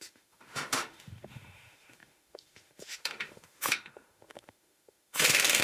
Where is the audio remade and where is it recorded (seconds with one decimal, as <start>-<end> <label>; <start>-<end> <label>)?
0.0-5.6 remade